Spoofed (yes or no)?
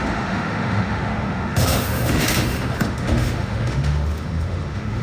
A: yes